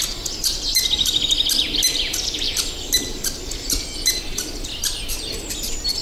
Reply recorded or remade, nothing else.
recorded